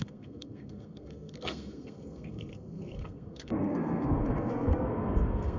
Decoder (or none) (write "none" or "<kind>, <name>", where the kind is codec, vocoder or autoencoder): codec, SNAC